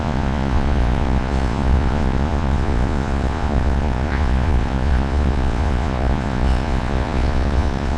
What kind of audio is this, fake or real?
fake